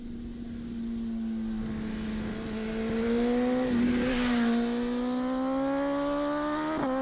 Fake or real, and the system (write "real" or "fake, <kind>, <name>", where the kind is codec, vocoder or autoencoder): real